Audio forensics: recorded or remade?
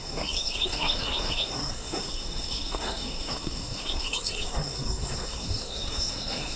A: remade